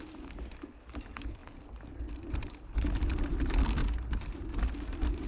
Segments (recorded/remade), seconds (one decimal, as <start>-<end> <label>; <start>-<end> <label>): 0.0-1.4 remade; 1.4-2.1 recorded; 2.1-3.8 remade; 3.8-4.5 recorded; 4.5-5.3 remade